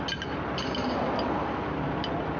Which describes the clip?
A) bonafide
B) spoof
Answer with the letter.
A